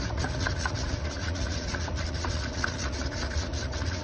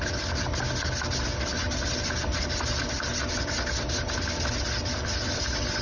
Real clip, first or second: second